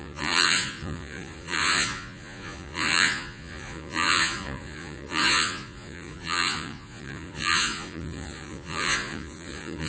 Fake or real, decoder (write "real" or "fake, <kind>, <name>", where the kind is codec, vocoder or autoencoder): fake, vocoder, Vocos